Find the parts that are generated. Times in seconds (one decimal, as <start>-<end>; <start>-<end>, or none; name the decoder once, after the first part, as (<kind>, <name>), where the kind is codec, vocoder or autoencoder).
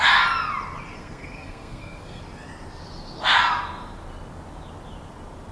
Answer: 1.0-2.2 (codec, SNAC)